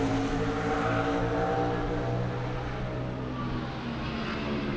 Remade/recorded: recorded